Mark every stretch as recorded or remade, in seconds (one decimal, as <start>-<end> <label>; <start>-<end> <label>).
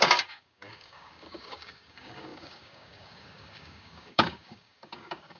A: 0.0-5.4 remade